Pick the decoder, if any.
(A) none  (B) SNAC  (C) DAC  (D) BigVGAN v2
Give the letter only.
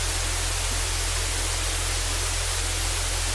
A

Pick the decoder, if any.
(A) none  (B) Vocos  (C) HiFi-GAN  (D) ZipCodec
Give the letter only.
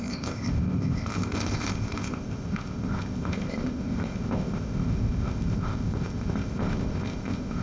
D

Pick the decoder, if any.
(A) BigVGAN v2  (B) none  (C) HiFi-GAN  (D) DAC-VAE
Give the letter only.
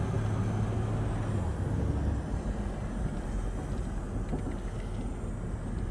B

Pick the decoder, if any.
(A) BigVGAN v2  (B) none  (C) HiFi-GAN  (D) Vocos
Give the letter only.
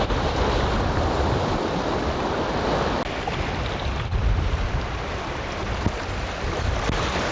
B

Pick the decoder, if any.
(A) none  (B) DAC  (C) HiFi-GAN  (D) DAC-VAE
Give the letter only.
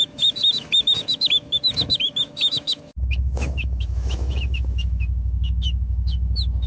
D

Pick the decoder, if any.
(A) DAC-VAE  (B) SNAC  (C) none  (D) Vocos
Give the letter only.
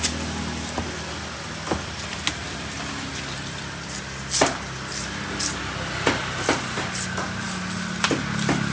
C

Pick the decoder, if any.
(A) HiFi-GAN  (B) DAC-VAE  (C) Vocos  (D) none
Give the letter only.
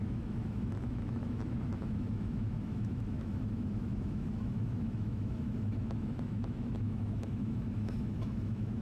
B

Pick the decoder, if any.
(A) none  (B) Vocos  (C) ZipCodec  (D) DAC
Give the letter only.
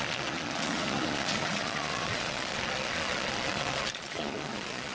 B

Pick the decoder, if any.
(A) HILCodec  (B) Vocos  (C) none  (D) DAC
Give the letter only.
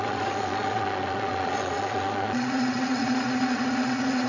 B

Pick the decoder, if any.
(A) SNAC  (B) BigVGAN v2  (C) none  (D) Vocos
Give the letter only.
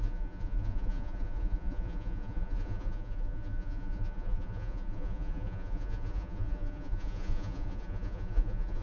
D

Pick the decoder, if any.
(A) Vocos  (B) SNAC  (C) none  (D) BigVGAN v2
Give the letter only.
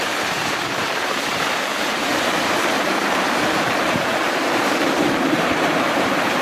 D